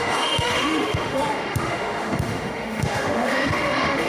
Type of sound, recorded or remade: remade